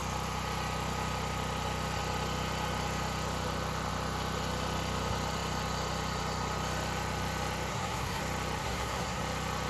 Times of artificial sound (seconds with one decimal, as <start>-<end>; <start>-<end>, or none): 7.7-8.2; 8.6-9.2